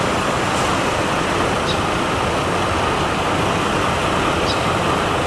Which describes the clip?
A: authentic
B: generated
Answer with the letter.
A